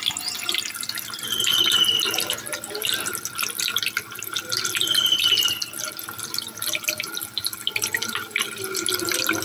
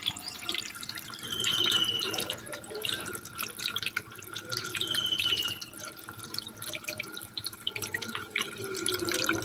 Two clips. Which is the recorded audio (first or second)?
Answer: first